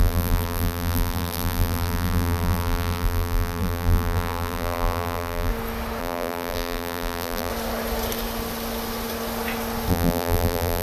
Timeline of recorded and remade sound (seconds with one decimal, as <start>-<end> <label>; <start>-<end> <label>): 0.0-5.5 remade; 5.5-6.0 recorded; 6.0-7.5 remade; 7.5-9.9 recorded; 9.9-10.8 remade